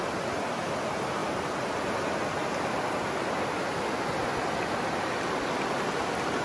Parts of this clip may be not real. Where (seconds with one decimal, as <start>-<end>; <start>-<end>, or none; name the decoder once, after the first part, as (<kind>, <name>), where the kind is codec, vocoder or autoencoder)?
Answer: none